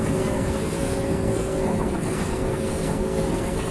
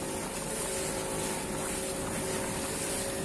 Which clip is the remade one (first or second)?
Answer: first